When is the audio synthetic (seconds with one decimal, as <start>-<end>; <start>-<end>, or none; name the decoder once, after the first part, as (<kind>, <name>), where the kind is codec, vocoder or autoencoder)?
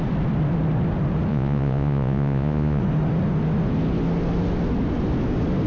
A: 1.3-2.8 (vocoder, Vocos)